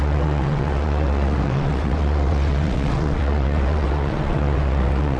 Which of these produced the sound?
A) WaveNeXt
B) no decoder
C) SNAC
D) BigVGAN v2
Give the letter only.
A